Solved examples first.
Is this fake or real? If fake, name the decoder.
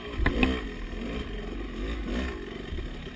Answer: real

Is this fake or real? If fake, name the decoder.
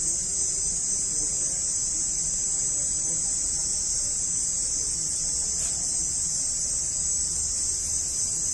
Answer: real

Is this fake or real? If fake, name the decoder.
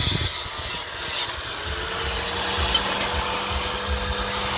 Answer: real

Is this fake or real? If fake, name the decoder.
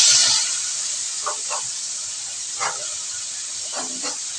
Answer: real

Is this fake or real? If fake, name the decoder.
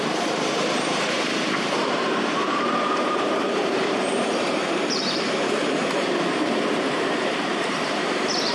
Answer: fake, vocoder, BigVGAN v2